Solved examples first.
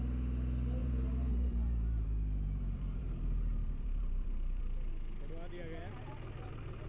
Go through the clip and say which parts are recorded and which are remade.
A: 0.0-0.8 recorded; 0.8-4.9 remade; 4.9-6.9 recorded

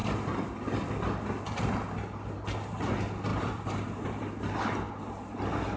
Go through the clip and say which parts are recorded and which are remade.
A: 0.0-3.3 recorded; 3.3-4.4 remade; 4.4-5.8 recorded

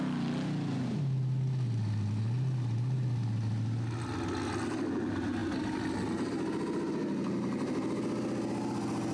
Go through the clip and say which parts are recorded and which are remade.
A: 0.0-9.1 recorded

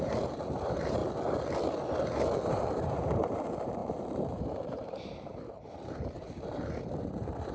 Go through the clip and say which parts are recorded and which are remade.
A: 0.0-1.0 remade; 1.0-2.5 recorded; 2.5-7.5 remade

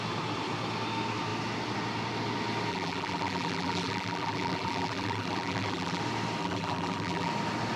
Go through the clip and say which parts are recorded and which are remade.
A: 0.0-2.7 recorded; 2.7-6.0 remade; 6.0-6.4 recorded; 6.4-7.3 remade; 7.3-7.8 recorded

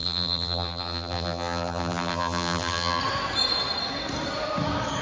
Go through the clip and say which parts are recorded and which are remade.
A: 0.0-3.0 remade; 3.0-5.0 recorded